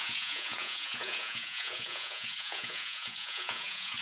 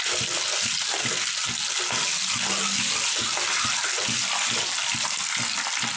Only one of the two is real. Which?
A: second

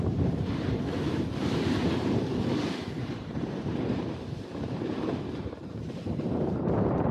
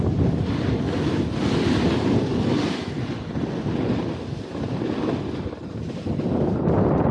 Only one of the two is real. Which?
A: second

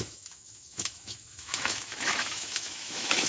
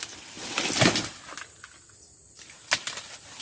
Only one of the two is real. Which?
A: second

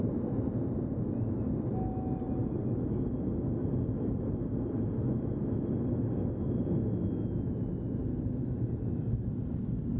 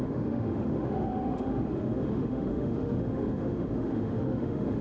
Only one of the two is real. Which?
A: first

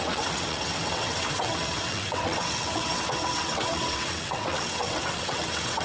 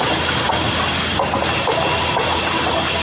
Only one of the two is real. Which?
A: second